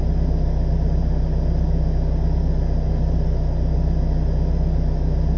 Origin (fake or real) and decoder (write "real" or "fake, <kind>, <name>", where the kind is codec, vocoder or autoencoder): real